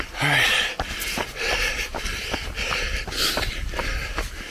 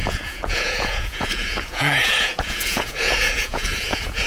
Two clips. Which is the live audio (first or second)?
first